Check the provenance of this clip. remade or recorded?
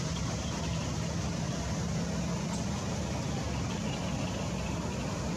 recorded